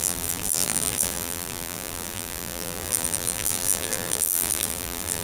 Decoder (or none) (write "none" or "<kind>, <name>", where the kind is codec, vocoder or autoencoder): vocoder, BigVGAN v2